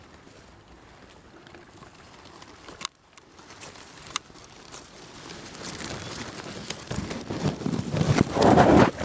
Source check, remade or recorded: remade